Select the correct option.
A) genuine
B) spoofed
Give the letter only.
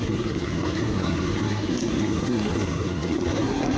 B